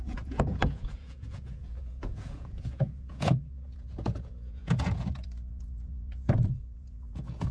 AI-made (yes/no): yes